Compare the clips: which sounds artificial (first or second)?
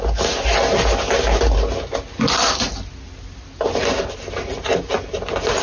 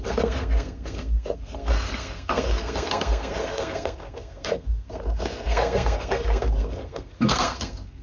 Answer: second